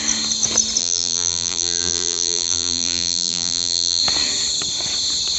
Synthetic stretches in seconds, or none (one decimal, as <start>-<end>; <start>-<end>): 0.8-4.0